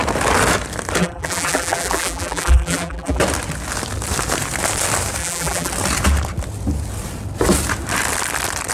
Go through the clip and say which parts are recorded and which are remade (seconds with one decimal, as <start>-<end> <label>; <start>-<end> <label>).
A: 0.0-1.0 recorded; 1.0-3.2 remade; 3.2-5.2 recorded; 5.2-5.7 remade; 5.7-8.7 recorded